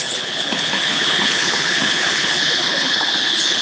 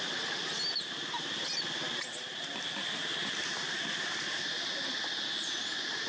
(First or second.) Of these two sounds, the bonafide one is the second